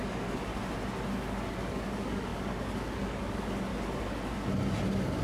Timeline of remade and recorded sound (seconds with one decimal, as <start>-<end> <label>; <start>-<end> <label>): 0.0-0.5 remade; 0.5-1.5 recorded; 1.5-3.7 remade; 3.7-5.2 recorded